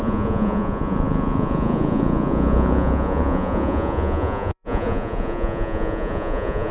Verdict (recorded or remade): remade